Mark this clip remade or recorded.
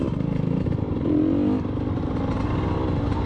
recorded